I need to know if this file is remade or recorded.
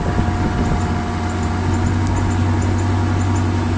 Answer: recorded